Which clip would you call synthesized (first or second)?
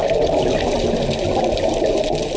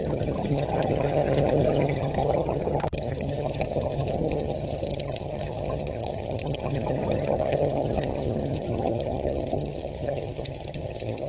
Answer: second